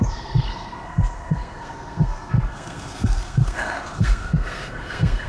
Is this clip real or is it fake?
fake